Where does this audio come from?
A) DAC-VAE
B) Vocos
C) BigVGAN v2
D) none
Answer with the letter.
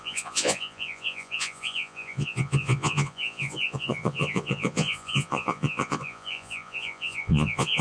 B